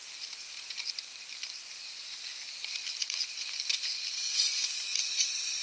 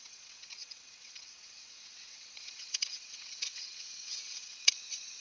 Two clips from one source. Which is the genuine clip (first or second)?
first